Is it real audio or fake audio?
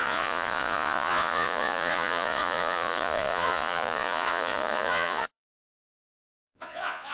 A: fake